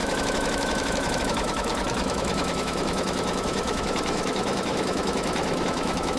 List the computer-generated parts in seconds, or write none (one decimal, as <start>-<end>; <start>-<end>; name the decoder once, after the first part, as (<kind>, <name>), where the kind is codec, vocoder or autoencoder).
0.0-6.2 (autoencoder, DAC-VAE)